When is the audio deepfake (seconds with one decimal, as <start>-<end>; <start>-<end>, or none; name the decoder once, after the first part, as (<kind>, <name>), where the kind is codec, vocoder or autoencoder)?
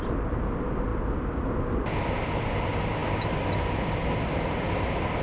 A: none